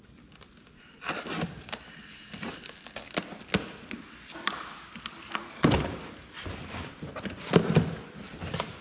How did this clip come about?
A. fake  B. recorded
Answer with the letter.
B